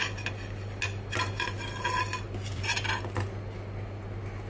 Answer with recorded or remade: recorded